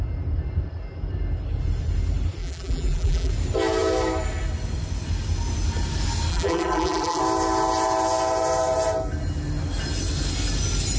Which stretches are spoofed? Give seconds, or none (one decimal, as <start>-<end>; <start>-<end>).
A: 2.4-3.3; 6.3-7.2